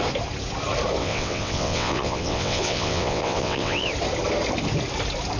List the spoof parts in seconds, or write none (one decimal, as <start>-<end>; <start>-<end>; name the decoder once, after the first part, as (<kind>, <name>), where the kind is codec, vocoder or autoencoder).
1.0-3.9 (vocoder, WaveNeXt)